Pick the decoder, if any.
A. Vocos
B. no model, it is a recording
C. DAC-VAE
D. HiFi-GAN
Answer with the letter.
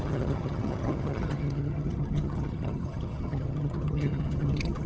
D